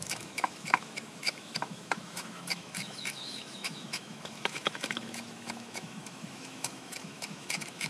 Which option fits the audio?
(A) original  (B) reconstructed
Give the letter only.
B